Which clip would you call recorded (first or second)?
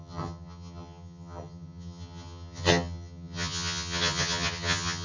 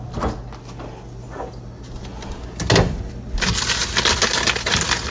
second